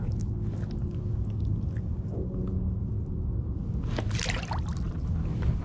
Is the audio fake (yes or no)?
no